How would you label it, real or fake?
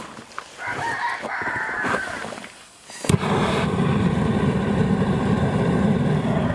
fake